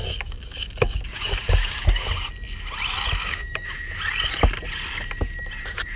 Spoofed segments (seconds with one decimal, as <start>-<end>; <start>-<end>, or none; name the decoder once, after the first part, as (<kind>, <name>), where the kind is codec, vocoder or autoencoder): 0.0-2.1 (codec, DAC); 3.2-4.0